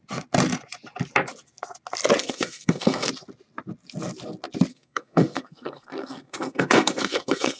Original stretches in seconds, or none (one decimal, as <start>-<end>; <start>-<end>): 0.0-2.2; 3.1-4.7